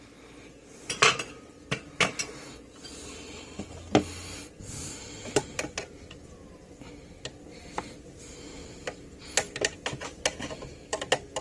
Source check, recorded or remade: recorded